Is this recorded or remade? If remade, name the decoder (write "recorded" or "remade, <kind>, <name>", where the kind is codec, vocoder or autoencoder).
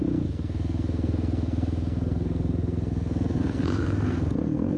remade, codec, SNAC